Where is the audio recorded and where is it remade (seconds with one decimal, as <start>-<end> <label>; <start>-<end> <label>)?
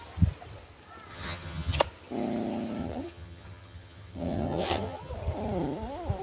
0.0-1.1 recorded; 1.1-1.8 remade; 1.8-2.8 recorded; 2.8-5.1 remade; 5.1-6.2 recorded